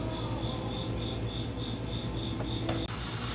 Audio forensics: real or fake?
real